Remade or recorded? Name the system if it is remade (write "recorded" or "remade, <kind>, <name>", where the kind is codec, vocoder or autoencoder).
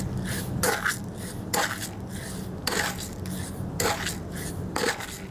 recorded